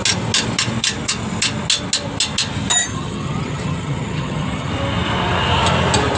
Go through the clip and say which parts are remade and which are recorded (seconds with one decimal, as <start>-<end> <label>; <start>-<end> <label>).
0.0-2.9 recorded; 2.9-4.7 remade; 4.7-6.2 recorded